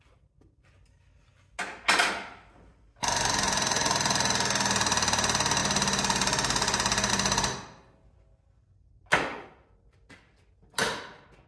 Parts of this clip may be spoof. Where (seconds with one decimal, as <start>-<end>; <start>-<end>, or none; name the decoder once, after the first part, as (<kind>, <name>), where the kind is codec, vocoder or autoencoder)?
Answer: none